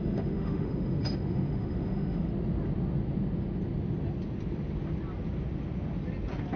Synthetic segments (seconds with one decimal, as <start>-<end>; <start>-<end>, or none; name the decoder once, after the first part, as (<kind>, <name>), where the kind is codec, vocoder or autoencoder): 0.0-2.3 (autoencoder, DAC-VAE)